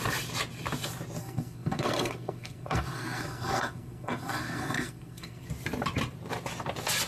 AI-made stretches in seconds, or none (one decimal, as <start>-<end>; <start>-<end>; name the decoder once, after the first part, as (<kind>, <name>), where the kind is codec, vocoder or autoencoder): 1.2-5.5 (codec, SNAC)